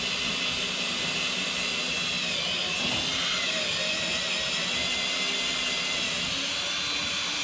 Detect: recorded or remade recorded